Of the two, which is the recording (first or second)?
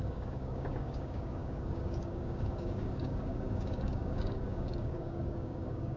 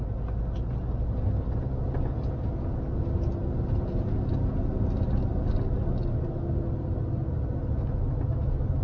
second